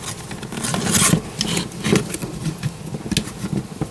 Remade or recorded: recorded